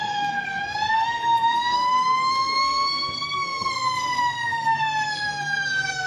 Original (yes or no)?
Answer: no